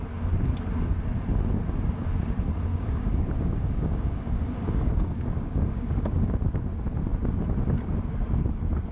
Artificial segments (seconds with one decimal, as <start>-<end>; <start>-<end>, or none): 2.7-6.3